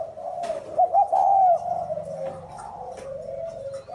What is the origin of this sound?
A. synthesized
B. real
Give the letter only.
B